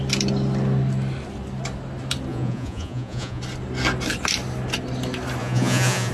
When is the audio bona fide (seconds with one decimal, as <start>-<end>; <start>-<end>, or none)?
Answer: 0.0-2.3; 3.4-5.4